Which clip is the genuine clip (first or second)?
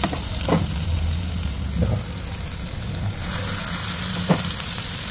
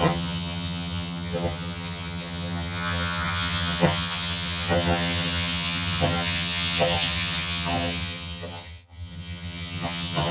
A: first